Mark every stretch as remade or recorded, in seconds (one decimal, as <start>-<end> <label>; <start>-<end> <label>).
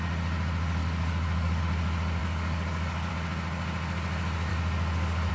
0.0-0.8 recorded; 0.8-1.6 remade; 1.6-2.2 recorded; 2.2-3.1 remade; 3.1-4.5 recorded; 4.5-5.3 remade